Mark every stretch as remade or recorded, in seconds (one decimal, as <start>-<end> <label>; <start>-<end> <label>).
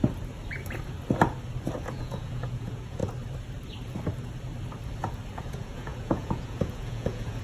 0.0-1.9 recorded; 1.9-3.0 remade; 3.0-5.4 recorded; 5.4-7.4 remade